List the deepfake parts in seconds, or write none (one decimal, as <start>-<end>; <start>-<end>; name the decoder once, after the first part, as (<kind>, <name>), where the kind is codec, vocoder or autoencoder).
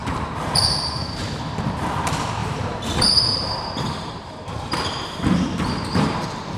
0.0-1.2 (vocoder, BigVGAN v2); 2.4-6.6